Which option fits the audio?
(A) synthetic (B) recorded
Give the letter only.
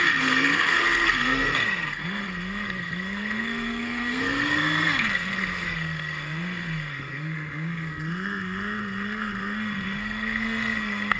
A